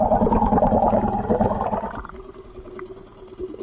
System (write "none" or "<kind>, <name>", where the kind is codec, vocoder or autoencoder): none